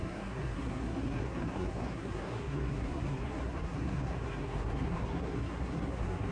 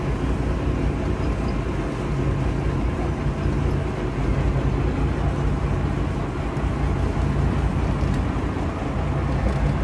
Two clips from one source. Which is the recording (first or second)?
second